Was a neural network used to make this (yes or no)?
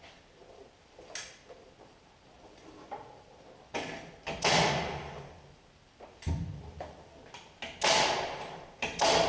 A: no